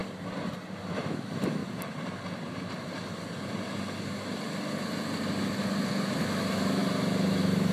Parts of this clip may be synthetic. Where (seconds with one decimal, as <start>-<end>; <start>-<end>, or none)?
0.8-1.6; 6.2-6.8; 7.3-7.7